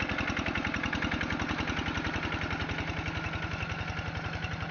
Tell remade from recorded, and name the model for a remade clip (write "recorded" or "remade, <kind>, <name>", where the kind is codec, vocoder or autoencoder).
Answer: recorded